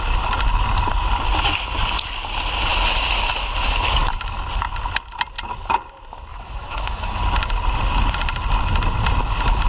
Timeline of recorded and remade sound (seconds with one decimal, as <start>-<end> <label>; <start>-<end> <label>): 0.0-6.3 recorded; 6.3-7.2 remade; 7.2-9.7 recorded